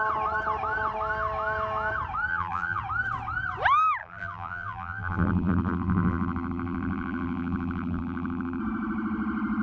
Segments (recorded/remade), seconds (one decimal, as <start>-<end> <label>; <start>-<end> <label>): 0.0-2.3 recorded; 2.3-2.8 remade; 2.8-4.0 recorded; 4.0-8.6 remade; 8.6-9.6 recorded